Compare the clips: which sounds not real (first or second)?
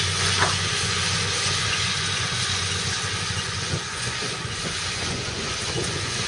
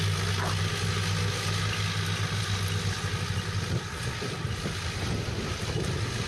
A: first